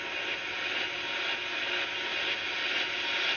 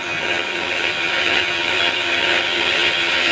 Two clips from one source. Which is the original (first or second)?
first